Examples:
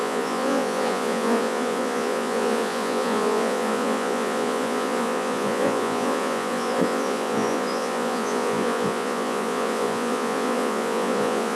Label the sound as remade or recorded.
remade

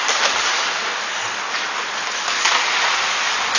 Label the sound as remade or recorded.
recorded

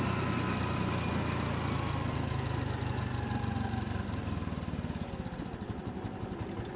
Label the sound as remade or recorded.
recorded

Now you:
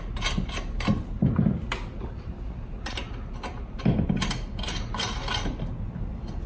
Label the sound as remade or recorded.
recorded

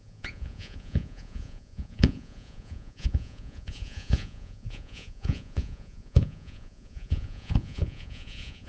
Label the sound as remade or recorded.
remade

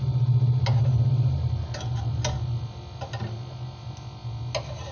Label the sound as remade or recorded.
recorded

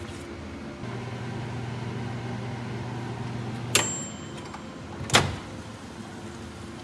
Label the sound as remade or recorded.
recorded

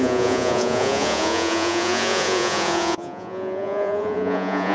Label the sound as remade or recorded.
remade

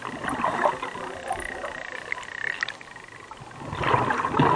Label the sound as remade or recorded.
recorded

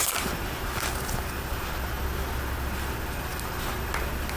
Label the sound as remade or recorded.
recorded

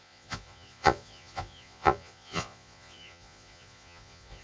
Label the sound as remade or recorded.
remade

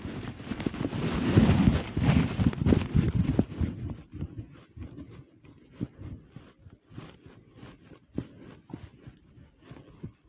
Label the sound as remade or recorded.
recorded